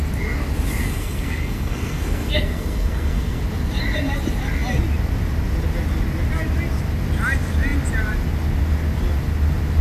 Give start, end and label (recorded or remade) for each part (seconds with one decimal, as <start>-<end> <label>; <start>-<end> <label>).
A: 0.0-0.8 recorded; 0.8-3.4 remade; 3.4-9.8 recorded